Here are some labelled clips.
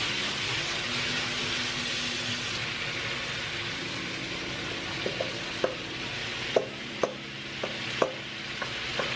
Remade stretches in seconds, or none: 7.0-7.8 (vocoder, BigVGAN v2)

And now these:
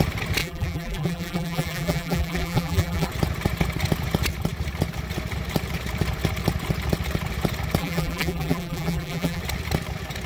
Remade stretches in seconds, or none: 0.4-3.1 (vocoder, BigVGAN v2); 7.8-9.4

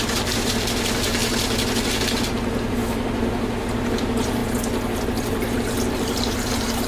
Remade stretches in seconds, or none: 0.0-1.2 (vocoder, BigVGAN v2); 2.3-2.8; 3.9-4.4; 5.9-6.9

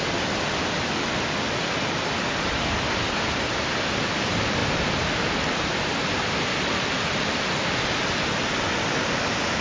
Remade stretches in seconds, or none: none

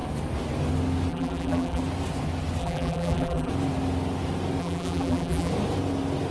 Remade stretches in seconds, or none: 1.1-1.8 (vocoder, BigVGAN v2); 2.6-3.5; 4.6-5.5

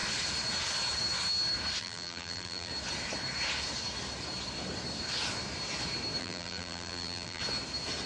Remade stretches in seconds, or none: 1.8-2.7 (vocoder, BigVGAN v2); 6.2-7.4

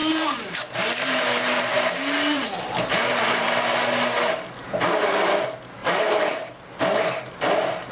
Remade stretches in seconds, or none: 0.0-3.5 (vocoder, BigVGAN v2); 5.8-7.4

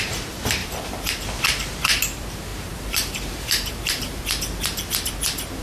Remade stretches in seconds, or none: 0.6-1.2 (vocoder, BigVGAN v2); 2.5-4.2